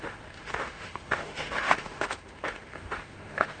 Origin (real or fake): fake